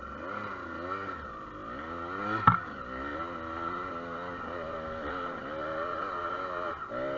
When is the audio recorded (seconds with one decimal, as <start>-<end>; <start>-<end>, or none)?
0.0-7.2